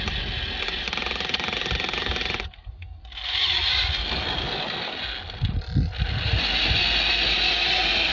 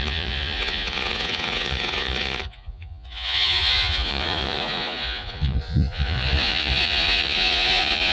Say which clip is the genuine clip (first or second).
first